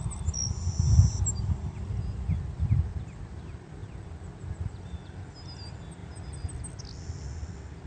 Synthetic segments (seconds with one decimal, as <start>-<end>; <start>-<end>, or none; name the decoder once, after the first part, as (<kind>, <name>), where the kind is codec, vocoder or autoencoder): none